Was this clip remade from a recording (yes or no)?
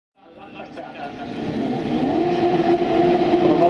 no